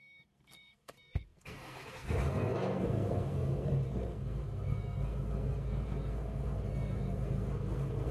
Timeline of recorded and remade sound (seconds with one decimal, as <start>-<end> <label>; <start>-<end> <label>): 0.0-8.1 remade